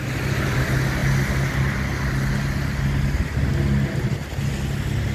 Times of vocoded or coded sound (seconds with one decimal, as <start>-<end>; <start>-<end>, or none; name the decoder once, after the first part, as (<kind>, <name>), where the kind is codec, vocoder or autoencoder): none